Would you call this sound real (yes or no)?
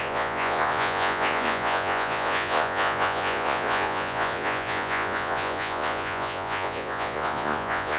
no